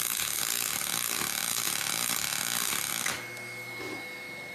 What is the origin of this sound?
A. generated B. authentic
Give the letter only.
B